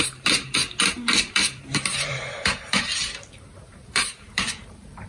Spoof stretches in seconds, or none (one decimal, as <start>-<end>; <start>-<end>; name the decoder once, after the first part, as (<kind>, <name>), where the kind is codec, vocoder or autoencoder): 0.0-0.6 (vocoder, BigVGAN v2); 1.2-5.1